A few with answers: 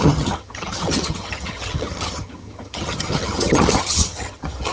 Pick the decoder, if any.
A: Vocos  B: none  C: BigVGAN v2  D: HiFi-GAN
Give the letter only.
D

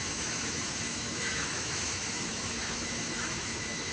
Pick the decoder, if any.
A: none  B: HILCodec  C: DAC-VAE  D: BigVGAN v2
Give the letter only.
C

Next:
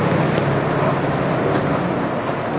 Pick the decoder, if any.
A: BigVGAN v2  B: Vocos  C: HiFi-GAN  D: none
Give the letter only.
D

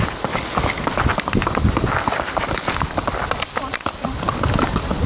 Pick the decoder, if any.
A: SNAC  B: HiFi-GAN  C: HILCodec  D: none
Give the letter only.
D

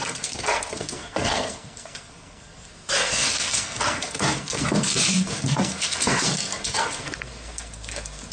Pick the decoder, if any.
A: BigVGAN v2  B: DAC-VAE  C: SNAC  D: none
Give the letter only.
C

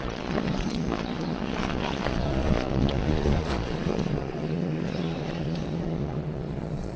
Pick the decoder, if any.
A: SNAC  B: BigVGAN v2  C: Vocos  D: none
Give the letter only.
C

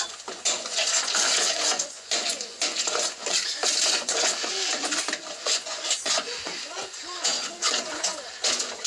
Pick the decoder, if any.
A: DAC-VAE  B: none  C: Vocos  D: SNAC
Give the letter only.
C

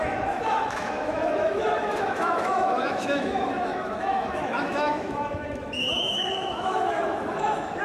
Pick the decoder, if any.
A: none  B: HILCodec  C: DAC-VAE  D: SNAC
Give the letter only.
C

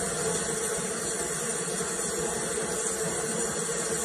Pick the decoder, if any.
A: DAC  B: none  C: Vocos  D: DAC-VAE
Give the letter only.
B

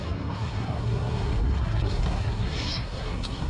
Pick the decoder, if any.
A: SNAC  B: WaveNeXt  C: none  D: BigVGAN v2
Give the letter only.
A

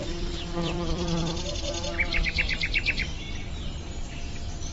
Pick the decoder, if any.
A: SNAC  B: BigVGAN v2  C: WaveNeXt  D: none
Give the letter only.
B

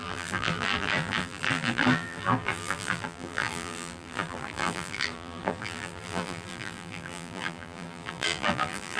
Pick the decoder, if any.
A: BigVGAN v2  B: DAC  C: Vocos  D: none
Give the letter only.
A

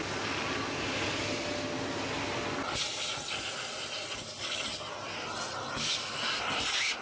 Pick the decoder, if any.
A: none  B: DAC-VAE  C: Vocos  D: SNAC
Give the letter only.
A